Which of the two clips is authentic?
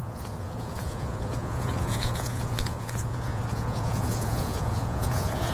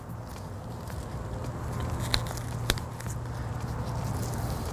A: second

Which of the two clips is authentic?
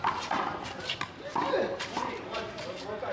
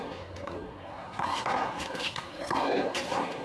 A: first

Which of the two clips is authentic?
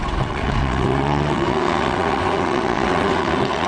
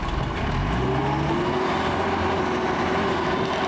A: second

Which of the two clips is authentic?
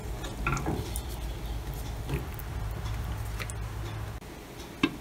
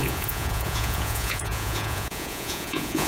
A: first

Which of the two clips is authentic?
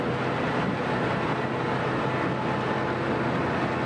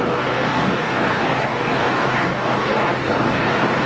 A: first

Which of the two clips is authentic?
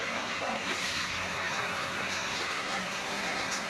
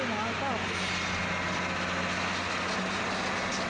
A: second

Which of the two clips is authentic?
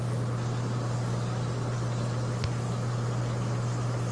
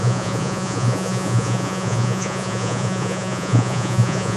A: first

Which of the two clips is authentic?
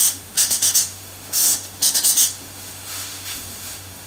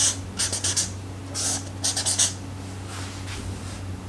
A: second